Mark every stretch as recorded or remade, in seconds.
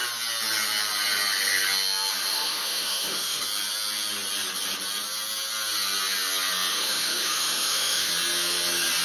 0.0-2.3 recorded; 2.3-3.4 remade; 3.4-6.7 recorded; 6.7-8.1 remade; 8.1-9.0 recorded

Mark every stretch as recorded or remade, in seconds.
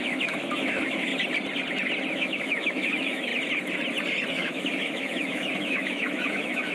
0.0-1.1 remade; 1.1-2.1 recorded; 2.1-3.3 remade; 3.3-4.3 recorded; 4.3-6.7 remade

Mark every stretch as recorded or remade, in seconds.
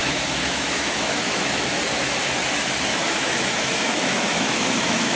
0.0-1.8 remade; 1.8-2.9 recorded; 2.9-5.2 remade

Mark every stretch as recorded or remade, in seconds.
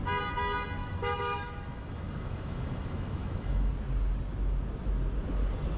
0.0-0.8 recorded; 0.8-3.7 remade; 3.7-5.8 recorded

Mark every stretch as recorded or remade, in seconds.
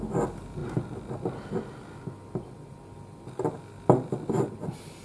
0.0-5.0 recorded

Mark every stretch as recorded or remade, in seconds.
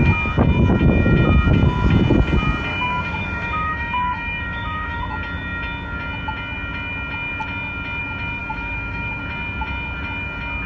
0.0-2.7 recorded; 2.7-5.0 remade; 5.0-8.4 recorded; 8.4-9.2 remade; 9.2-10.7 recorded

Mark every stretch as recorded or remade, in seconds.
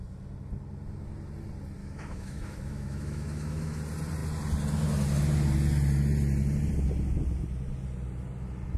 0.0-1.8 recorded; 1.8-3.8 remade; 3.8-8.8 recorded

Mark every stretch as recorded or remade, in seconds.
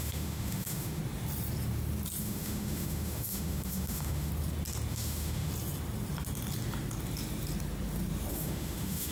0.0-1.0 remade; 1.0-2.2 recorded; 2.2-4.3 remade; 4.3-4.9 recorded; 4.9-5.5 remade; 5.5-8.3 recorded; 8.3-9.1 remade